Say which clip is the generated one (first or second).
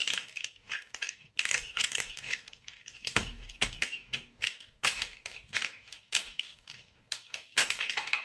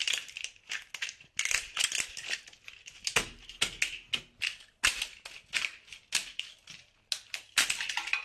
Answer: first